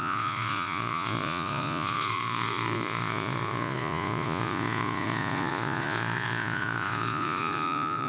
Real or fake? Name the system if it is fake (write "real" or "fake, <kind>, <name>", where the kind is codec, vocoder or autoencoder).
fake, vocoder, Vocos